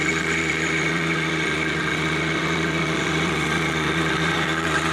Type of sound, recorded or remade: remade